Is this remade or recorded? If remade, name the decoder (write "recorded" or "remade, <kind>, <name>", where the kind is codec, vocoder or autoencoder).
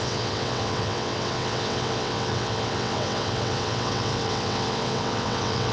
remade, vocoder, WaveNeXt